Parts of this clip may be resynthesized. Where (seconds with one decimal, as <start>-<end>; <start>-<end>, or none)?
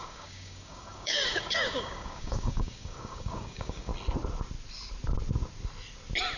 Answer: 0.0-3.9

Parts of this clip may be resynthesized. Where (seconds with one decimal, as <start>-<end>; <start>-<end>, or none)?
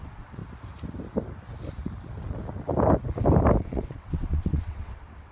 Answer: 0.0-0.4; 3.6-5.3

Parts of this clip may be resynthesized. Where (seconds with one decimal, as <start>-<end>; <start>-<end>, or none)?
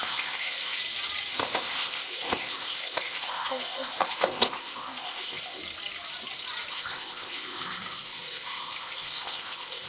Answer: 0.0-0.8; 1.3-5.6; 6.7-9.9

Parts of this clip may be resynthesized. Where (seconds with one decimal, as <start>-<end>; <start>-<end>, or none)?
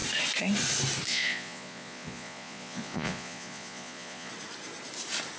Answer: 1.1-4.3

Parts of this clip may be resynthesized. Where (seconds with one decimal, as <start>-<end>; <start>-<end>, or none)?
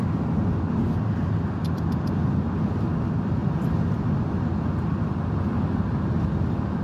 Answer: none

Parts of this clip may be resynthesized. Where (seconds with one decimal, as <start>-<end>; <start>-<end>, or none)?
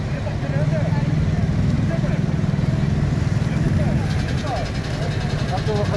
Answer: none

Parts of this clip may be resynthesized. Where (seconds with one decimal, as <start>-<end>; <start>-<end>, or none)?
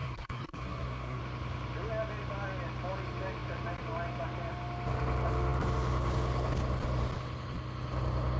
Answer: 0.0-1.2